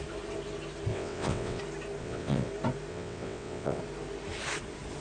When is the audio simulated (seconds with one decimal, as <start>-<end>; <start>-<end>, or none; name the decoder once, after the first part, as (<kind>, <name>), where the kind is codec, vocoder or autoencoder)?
0.9-1.6 (vocoder, WaveNeXt); 2.0-2.5; 2.9-3.8